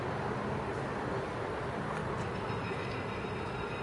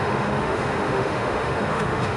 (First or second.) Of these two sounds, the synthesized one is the second